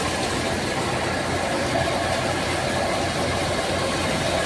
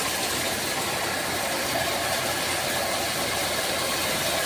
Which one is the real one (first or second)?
first